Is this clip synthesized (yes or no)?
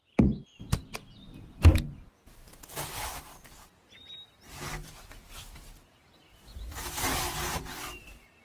no